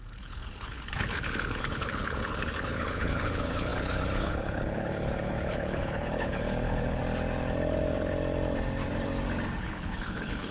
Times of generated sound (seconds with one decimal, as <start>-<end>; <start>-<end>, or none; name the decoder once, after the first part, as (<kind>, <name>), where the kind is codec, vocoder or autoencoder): 0.0-7.0 (codec, HILCodec); 9.6-10.5